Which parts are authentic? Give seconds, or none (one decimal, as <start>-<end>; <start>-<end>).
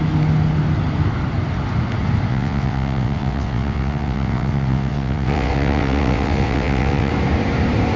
0.0-2.3; 7.1-8.0